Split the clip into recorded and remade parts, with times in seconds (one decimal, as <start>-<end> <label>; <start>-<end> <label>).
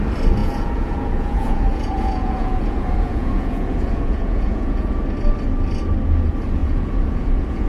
0.0-0.4 recorded; 0.4-4.9 remade; 4.9-6.6 recorded; 6.6-7.7 remade